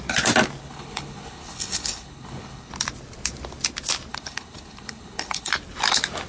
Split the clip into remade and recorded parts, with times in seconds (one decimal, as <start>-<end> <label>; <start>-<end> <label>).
0.0-0.6 recorded; 0.6-2.7 remade; 2.7-4.1 recorded; 4.1-5.5 remade; 5.5-6.3 recorded